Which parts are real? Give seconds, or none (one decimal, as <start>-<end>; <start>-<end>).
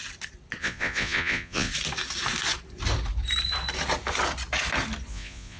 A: 0.0-0.6; 1.7-5.1